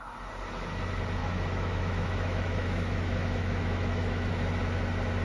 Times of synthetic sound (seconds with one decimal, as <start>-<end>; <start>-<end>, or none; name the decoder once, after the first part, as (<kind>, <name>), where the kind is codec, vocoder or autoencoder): 1.2-4.3 (autoencoder, DAC-VAE)